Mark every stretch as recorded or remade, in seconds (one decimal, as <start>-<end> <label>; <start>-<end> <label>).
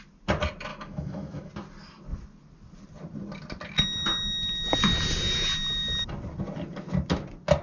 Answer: 0.0-0.7 recorded; 0.7-1.5 remade; 1.5-7.6 recorded